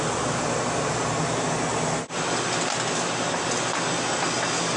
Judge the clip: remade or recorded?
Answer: recorded